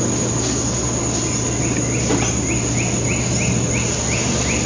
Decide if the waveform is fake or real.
real